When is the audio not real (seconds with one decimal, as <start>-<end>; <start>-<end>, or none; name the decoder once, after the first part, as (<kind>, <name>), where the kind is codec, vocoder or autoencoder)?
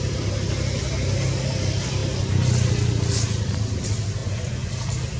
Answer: 4.2-4.7 (vocoder, Vocos)